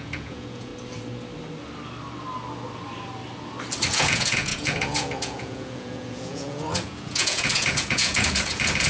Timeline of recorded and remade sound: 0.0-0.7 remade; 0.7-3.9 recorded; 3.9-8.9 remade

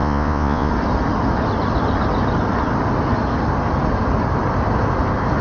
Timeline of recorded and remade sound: 0.0-0.7 remade; 0.7-5.4 recorded

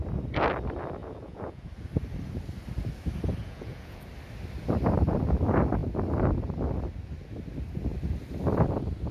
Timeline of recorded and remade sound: 0.0-1.0 recorded; 1.0-1.7 remade; 1.7-3.4 recorded; 3.4-4.1 remade; 4.1-9.1 recorded

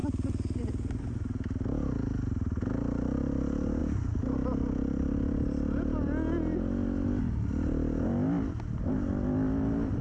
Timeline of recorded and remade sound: 0.0-10.0 recorded

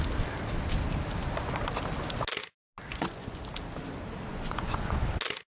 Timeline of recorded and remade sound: 0.0-2.9 recorded; 2.9-3.4 remade; 3.4-4.3 recorded; 4.3-5.0 remade; 5.0-5.5 recorded

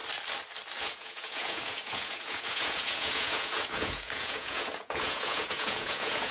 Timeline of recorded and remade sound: 0.0-0.8 recorded; 0.8-6.3 remade

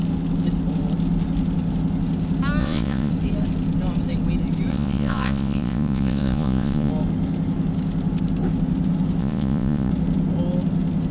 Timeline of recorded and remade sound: 0.0-2.6 recorded; 2.6-3.1 remade; 3.1-4.7 recorded; 4.7-6.9 remade; 6.9-9.2 recorded; 9.2-9.9 remade; 9.9-11.1 recorded